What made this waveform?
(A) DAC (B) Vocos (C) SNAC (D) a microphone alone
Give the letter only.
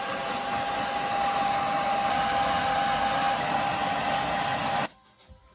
D